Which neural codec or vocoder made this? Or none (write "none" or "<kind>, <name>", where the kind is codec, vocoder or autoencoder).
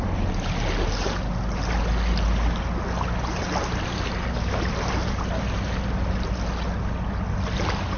none